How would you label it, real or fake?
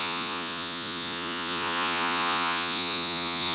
fake